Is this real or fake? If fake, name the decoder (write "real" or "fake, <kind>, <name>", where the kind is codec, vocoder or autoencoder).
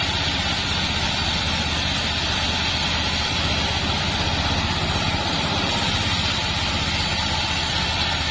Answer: fake, vocoder, BigVGAN v2